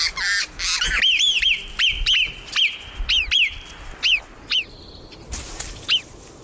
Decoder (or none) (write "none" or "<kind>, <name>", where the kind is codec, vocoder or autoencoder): none